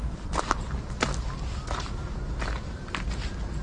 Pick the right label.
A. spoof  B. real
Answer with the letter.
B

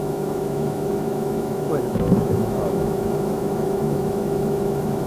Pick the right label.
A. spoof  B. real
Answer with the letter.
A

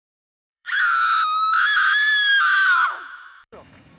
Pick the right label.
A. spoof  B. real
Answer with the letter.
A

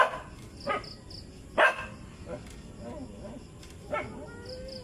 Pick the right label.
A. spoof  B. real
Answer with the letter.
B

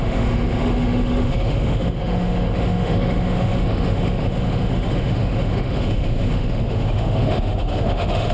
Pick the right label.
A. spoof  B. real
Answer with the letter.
A